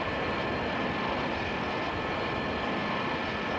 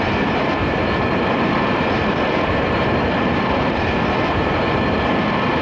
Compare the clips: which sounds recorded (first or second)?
first